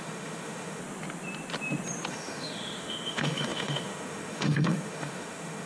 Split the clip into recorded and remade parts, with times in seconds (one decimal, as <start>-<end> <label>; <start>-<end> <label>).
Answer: 0.0-0.8 remade; 0.8-2.1 recorded; 2.1-5.7 remade